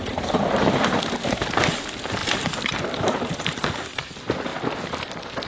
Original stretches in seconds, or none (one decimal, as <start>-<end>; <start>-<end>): 4.5-5.5

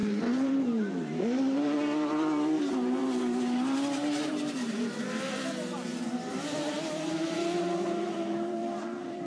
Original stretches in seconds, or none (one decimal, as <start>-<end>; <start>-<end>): none

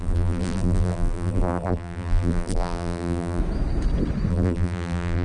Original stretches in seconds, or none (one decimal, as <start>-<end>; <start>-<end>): 3.4-4.3

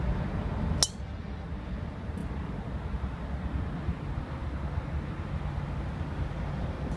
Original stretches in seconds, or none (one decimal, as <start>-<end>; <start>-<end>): 0.0-7.0

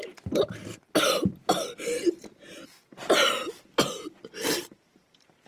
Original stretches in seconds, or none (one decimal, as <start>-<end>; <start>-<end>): 0.0-3.7

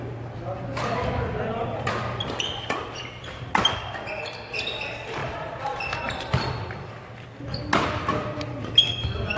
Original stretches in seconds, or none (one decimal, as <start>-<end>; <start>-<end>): 0.0-5.2; 6.9-9.4

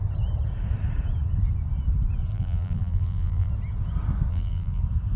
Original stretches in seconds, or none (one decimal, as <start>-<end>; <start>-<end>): 0.0-2.3; 3.5-4.3; 4.8-5.2